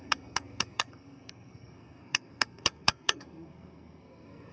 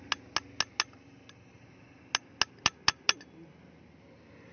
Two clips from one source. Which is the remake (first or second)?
first